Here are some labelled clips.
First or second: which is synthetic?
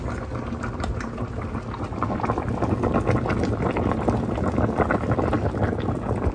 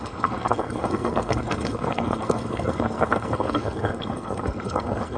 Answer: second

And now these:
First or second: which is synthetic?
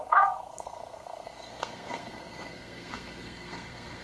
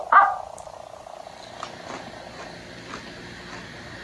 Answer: first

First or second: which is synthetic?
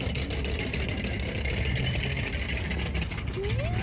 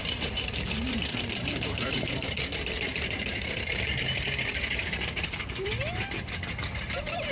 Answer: second